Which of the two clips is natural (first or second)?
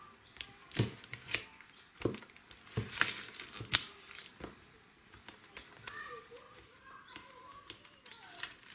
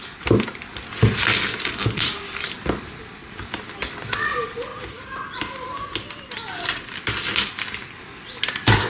second